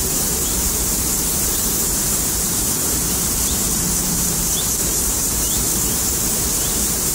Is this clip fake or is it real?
fake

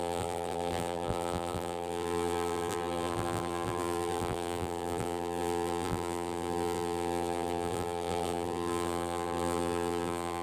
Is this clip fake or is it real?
fake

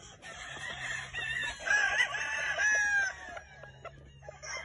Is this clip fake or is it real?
real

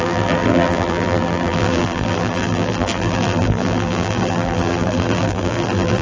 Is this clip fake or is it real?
fake